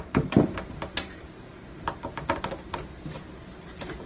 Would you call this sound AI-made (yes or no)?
no